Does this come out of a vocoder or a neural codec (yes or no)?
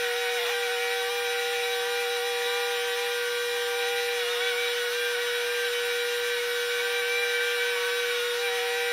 no